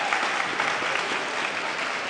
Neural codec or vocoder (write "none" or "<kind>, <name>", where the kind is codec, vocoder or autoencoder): none